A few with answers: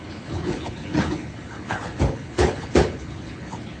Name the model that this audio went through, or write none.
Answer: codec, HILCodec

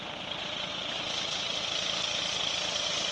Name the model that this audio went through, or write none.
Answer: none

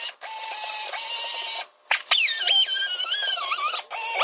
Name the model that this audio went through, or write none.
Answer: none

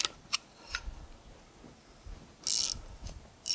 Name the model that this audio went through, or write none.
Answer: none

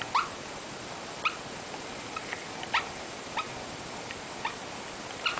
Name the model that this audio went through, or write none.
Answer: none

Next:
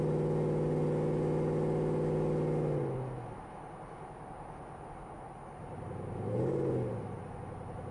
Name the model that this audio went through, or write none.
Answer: none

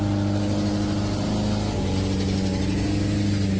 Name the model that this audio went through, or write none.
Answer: none